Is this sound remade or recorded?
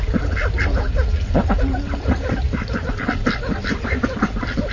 recorded